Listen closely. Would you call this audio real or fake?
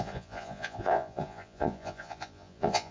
fake